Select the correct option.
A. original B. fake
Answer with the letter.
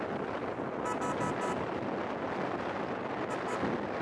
A